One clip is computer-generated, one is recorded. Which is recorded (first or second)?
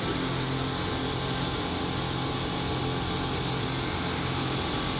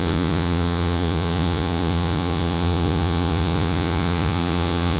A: first